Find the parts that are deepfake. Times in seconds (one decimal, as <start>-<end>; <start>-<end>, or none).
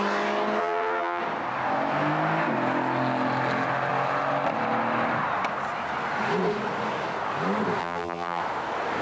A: 0.6-1.2; 7.8-8.4